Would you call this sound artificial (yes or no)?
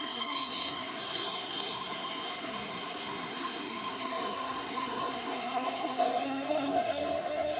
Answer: yes